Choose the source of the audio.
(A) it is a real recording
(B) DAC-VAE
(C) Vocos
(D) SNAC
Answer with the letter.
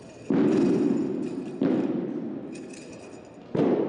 A